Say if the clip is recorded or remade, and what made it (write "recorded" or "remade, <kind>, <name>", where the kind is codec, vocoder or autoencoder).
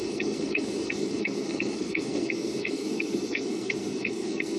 remade, codec, SNAC